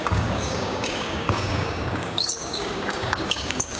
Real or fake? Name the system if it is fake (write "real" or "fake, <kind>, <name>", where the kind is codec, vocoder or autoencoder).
fake, codec, DAC